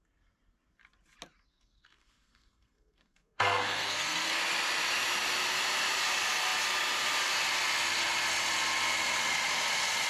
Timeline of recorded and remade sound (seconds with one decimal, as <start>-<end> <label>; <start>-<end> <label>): 0.0-1.5 recorded; 1.5-4.4 remade; 4.4-10.1 recorded